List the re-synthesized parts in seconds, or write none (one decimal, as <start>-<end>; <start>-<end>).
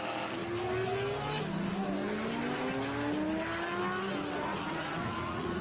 4.5-5.6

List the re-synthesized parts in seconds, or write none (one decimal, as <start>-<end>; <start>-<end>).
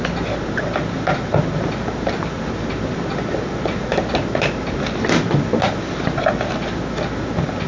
none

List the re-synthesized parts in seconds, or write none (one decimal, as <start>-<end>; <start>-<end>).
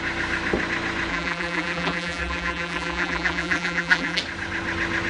1.1-4.2